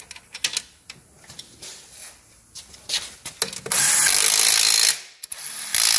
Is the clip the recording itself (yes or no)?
yes